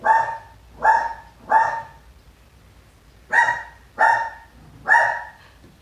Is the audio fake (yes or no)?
no